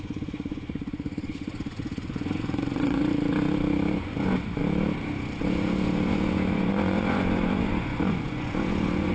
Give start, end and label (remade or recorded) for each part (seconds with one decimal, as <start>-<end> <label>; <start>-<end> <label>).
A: 0.0-3.0 remade; 3.0-3.9 recorded; 3.9-4.6 remade; 4.6-5.4 recorded; 5.4-9.1 remade

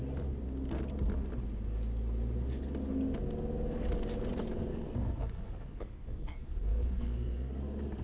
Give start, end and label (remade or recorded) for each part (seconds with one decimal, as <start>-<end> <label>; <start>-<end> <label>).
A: 0.0-4.7 recorded; 4.7-7.6 remade; 7.6-8.0 recorded

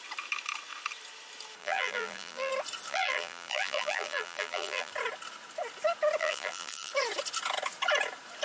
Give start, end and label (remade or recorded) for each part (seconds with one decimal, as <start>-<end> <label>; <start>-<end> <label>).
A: 0.0-1.6 recorded; 1.6-2.5 remade; 2.5-2.9 recorded; 2.9-4.9 remade; 4.9-6.2 recorded; 6.2-6.9 remade; 6.9-8.4 recorded

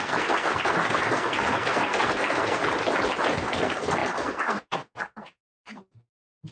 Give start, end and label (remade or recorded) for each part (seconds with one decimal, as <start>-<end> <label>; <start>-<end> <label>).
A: 0.0-2.6 remade; 2.6-3.4 recorded; 3.4-6.5 remade

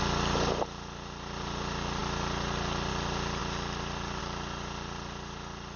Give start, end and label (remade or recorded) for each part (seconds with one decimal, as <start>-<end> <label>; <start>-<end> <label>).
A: 0.0-5.8 recorded

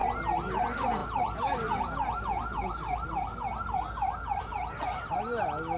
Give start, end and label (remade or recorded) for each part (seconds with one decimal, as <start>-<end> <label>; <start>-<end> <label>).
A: 0.0-5.8 recorded

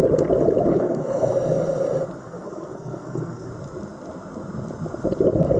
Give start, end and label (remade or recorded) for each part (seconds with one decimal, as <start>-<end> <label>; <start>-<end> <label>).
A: 0.0-0.7 recorded; 0.7-1.3 remade; 1.3-2.2 recorded; 2.2-3.5 remade; 3.5-5.6 recorded

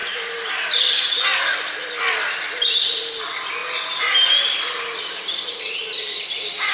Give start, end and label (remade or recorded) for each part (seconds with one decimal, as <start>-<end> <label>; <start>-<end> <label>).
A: 0.0-6.7 recorded